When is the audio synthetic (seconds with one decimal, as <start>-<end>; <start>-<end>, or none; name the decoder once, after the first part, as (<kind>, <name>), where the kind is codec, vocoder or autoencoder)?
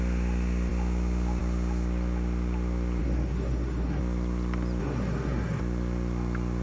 3.0-4.0 (codec, SNAC); 4.8-5.6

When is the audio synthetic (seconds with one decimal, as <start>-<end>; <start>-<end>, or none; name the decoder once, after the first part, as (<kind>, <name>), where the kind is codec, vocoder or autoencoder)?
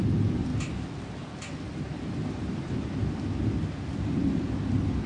none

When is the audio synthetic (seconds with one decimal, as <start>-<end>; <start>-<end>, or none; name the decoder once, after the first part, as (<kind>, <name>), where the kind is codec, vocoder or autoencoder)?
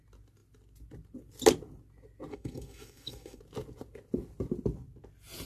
2.3-3.4 (codec, SNAC)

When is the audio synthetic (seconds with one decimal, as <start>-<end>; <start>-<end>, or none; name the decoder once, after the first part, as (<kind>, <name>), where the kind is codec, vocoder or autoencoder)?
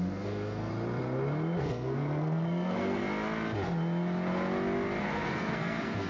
0.0-0.7 (codec, SNAC); 1.6-3.0; 5.0-6.1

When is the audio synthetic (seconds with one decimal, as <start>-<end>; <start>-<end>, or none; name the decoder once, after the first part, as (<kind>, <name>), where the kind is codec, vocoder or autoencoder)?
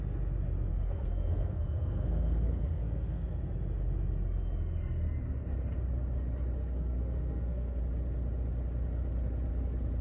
0.7-3.4 (codec, SNAC); 6.6-7.8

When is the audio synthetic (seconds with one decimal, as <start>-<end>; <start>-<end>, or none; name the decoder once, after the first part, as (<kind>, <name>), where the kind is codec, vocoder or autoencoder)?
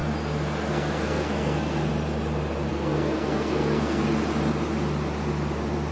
0.7-1.9 (codec, SNAC); 2.7-4.0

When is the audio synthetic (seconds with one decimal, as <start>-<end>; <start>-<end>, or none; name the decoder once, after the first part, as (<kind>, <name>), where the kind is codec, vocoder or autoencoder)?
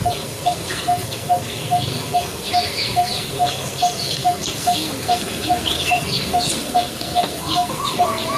0.0-8.4 (codec, SNAC)